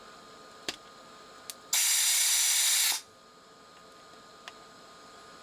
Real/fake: real